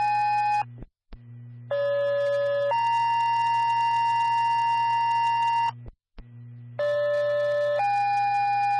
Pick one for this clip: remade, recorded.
recorded